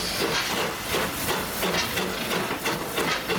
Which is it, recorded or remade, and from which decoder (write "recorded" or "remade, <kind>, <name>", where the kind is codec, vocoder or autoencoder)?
recorded